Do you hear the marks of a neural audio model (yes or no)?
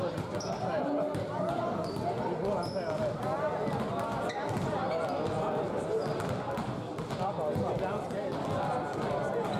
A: no